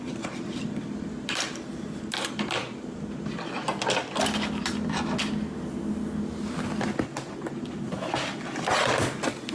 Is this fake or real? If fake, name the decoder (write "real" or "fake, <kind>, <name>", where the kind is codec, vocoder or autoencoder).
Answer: real